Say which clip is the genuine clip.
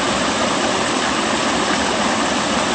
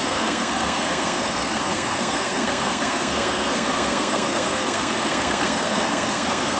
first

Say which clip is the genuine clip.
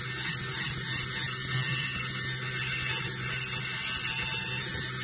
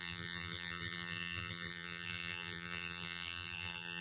first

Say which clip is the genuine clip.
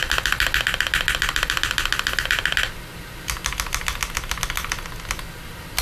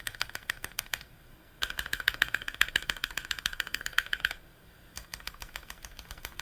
first